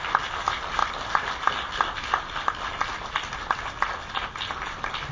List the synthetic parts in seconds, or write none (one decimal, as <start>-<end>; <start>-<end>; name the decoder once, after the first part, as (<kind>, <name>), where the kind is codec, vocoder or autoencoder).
none